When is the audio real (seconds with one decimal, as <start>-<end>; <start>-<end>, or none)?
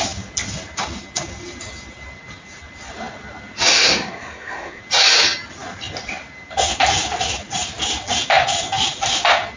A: 0.0-3.7; 4.8-9.6